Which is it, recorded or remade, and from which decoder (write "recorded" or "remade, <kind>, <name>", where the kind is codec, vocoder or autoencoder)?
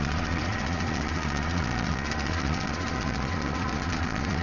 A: remade, vocoder, Vocos